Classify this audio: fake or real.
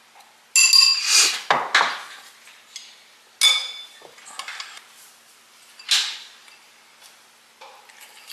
real